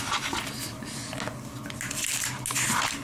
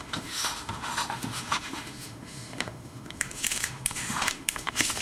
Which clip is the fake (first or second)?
second